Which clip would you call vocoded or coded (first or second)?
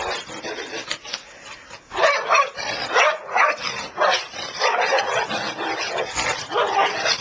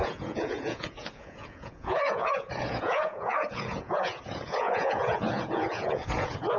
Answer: second